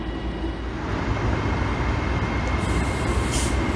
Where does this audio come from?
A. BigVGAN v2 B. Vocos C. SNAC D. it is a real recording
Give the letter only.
D